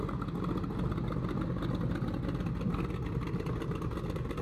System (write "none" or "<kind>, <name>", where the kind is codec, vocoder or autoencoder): none